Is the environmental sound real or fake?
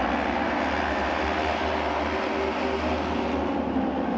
real